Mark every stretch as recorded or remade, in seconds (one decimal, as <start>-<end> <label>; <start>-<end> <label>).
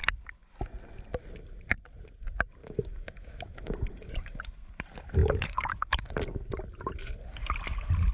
0.0-2.6 recorded; 2.6-4.4 remade; 4.4-5.2 recorded; 5.2-6.1 remade; 6.1-8.1 recorded